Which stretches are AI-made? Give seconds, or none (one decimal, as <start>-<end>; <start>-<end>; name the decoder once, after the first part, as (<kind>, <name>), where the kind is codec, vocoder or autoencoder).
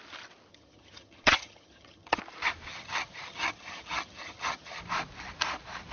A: 0.5-2.2 (vocoder, HiFi-GAN); 2.7-4.8